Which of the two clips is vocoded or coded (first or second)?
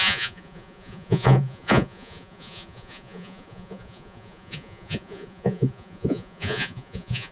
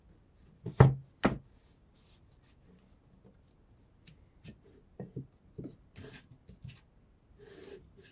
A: first